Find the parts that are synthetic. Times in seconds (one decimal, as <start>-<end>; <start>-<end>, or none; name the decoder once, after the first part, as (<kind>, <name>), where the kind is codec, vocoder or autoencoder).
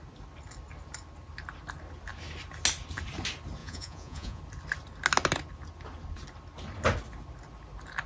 3.6-4.4 (vocoder, Vocos)